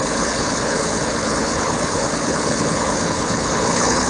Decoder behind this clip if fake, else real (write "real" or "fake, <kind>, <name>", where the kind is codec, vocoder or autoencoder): fake, codec, HILCodec